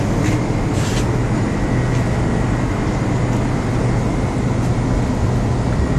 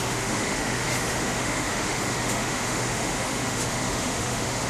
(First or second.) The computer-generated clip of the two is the second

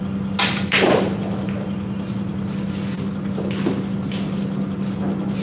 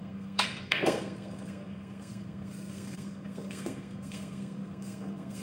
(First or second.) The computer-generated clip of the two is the second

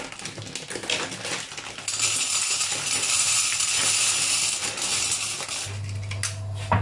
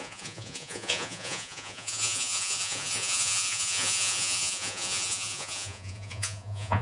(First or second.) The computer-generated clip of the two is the second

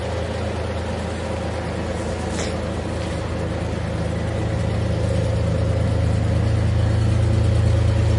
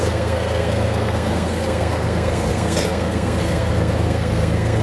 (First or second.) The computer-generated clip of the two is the second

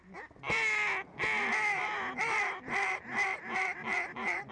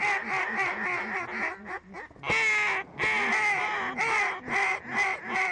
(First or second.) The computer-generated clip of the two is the first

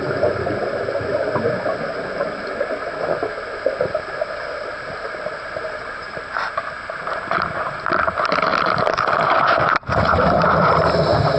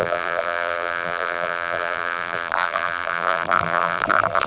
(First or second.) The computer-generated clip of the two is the second